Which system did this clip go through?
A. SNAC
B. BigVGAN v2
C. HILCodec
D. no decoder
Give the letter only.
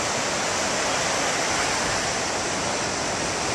D